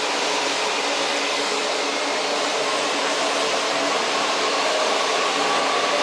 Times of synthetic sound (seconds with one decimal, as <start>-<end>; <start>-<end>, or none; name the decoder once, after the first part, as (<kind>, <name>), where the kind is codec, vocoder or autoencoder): 1.1-1.7 (codec, DAC)